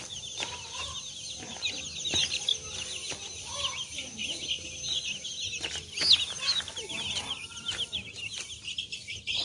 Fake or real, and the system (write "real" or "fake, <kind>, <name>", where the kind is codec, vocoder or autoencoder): real